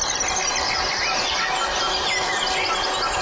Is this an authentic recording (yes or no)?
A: yes